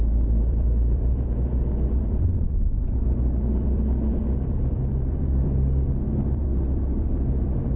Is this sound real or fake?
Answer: fake